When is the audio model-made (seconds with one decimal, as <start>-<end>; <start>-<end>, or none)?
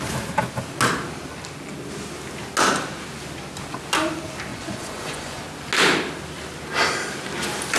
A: 4.5-5.4